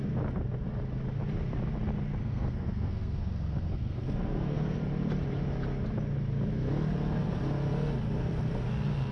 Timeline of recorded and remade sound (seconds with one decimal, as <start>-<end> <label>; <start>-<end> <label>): 0.0-2.2 recorded; 2.2-4.8 remade; 4.8-9.1 recorded